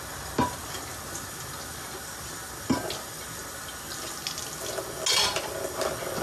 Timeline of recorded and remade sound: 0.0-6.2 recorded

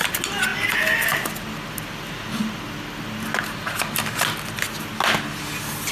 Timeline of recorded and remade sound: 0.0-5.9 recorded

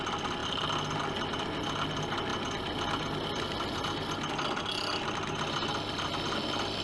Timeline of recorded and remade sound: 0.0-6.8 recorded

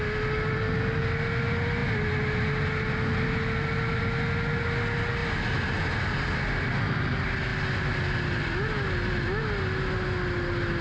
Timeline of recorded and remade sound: 0.0-10.8 recorded

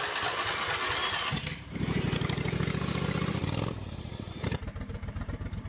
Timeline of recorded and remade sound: 0.0-5.7 recorded

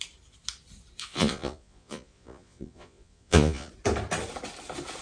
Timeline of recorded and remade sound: 0.0-1.0 recorded; 1.0-3.7 remade; 3.7-5.0 recorded